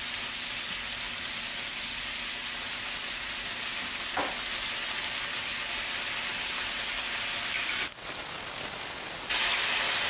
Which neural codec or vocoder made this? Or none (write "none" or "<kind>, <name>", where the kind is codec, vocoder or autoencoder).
none